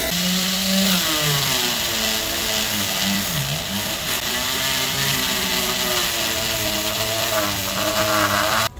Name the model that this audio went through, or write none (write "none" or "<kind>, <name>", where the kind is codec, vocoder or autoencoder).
none